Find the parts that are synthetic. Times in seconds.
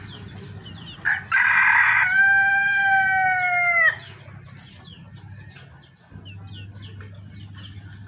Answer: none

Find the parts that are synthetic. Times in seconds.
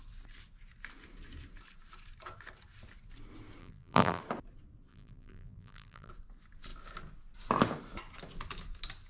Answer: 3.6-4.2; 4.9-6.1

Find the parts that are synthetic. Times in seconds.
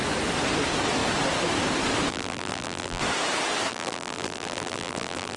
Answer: 2.1-3.0; 3.7-5.4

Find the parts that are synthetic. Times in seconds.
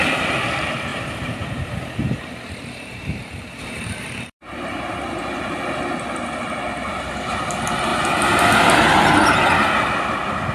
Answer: 0.9-5.2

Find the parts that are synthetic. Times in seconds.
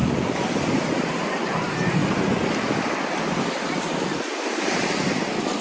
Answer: 0.0-2.0; 3.4-5.6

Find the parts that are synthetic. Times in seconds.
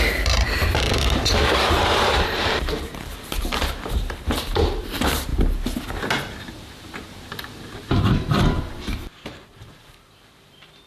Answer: 0.0-5.3; 6.5-10.9